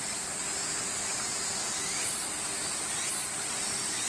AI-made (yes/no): no